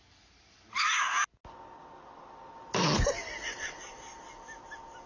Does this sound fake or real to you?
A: real